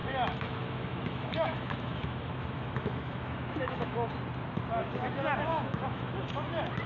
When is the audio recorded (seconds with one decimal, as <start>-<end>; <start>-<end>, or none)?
4.1-5.5; 6.1-6.9